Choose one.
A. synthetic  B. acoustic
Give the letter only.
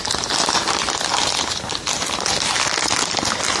B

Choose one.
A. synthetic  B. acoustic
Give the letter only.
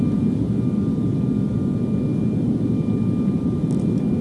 B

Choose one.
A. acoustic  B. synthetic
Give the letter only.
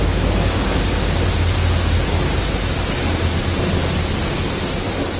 A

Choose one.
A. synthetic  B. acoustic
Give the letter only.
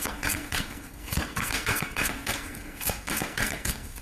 A